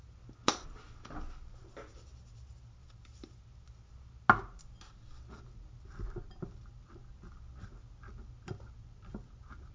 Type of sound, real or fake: real